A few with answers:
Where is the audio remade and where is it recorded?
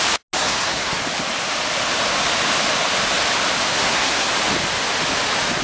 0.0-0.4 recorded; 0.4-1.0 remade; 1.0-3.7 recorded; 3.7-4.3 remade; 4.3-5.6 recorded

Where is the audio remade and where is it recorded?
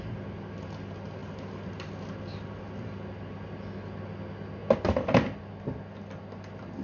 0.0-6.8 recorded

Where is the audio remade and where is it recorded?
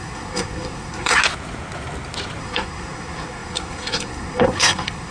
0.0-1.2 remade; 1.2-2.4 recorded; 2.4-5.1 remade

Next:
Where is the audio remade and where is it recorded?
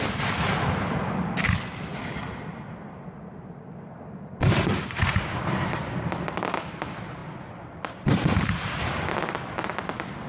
0.0-10.3 recorded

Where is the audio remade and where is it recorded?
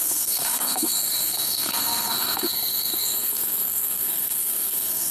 0.0-5.1 remade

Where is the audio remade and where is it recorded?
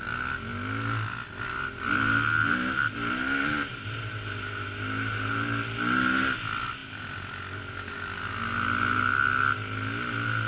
0.0-10.5 recorded